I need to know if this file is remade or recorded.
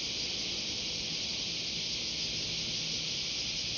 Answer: recorded